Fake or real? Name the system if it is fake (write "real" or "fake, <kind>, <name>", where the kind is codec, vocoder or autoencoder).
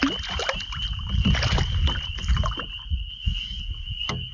real